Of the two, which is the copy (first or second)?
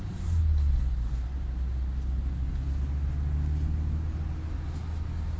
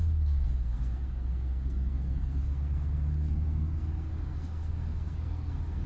second